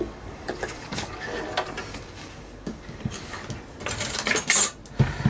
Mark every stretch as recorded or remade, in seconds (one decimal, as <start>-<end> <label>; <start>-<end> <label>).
0.0-1.3 remade; 1.3-1.9 recorded; 1.9-3.4 remade; 3.4-5.3 recorded